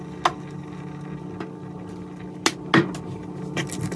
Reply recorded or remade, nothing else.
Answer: recorded